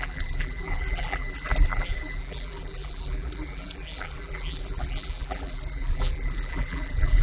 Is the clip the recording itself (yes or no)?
no